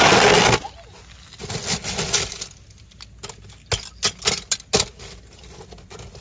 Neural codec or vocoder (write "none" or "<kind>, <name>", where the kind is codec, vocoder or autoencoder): none